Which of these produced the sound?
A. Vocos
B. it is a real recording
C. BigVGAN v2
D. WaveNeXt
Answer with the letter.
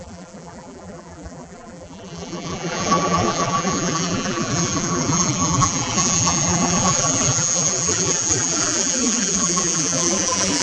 C